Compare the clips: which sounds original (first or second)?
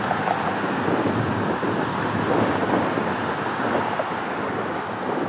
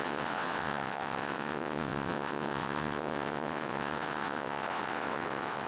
first